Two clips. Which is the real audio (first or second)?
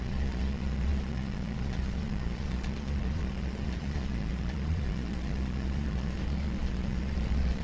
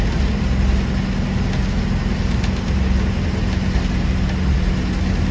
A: second